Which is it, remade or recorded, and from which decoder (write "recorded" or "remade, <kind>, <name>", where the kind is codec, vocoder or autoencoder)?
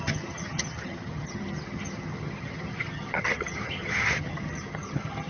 remade, vocoder, HiFi-GAN